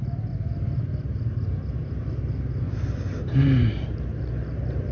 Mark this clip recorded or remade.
recorded